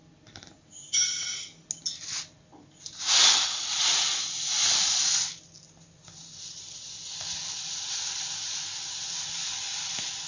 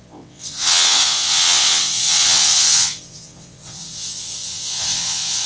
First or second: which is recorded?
first